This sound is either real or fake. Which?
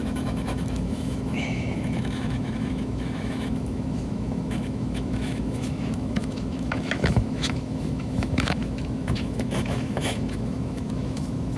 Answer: fake